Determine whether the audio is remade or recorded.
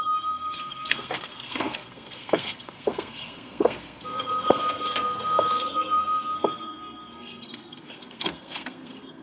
remade